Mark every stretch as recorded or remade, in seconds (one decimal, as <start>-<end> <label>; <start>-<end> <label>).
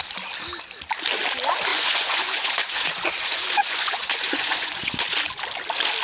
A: 0.0-1.7 recorded; 1.7-5.3 remade; 5.3-6.0 recorded